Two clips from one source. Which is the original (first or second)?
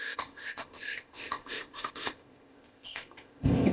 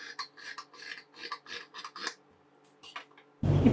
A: second